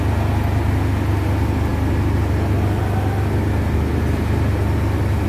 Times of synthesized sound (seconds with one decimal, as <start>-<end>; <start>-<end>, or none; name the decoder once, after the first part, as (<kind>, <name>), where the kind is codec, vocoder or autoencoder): none